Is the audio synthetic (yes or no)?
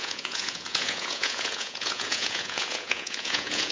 yes